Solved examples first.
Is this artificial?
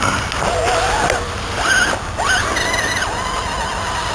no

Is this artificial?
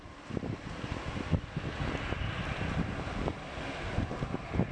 no